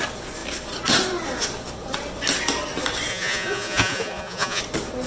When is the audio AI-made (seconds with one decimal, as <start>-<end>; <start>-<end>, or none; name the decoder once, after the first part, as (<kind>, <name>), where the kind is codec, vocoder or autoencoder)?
3.1-4.6 (vocoder, Vocos)